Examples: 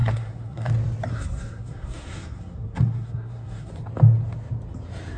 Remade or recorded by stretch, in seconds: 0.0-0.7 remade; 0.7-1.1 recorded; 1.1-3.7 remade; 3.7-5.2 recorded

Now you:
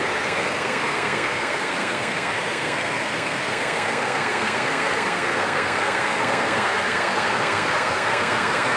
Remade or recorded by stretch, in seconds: 0.0-8.8 remade

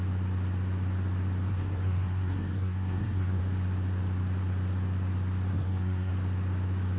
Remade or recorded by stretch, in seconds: 0.0-1.5 recorded; 1.5-3.4 remade; 3.4-5.5 recorded; 5.5-6.1 remade; 6.1-7.0 recorded

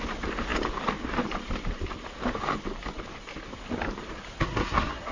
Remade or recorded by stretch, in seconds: 0.0-4.4 recorded; 4.4-5.1 remade

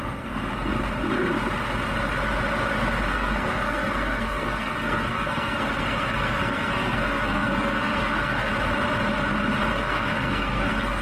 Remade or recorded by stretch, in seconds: 0.0-0.7 remade; 0.7-3.1 recorded; 3.1-8.5 remade; 8.5-9.7 recorded; 9.7-11.0 remade

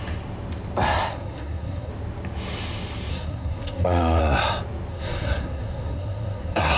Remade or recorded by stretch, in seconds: 0.0-1.1 recorded; 1.1-1.9 remade; 1.9-3.1 recorded; 3.1-4.2 remade; 4.2-4.9 recorded; 4.9-6.8 remade

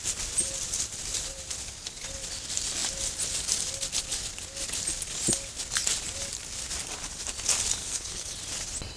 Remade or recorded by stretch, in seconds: 0.0-7.8 recorded; 7.8-8.3 remade; 8.3-9.0 recorded